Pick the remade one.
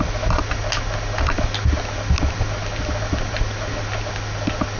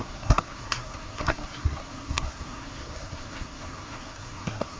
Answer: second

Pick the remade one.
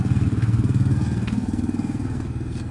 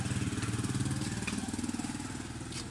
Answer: first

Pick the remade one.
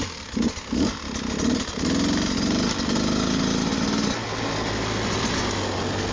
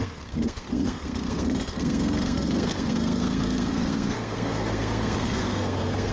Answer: second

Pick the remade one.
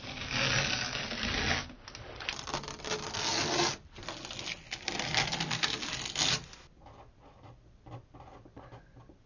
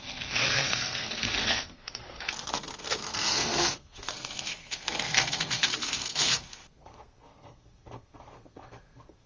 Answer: second